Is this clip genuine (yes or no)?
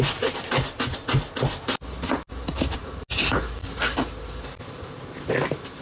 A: yes